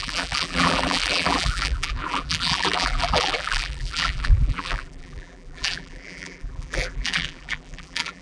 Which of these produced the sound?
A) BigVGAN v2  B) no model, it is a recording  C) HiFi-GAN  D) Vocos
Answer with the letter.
A